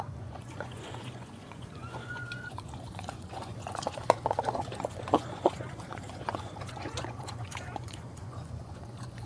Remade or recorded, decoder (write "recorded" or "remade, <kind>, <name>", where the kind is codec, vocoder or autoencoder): remade, vocoder, Vocos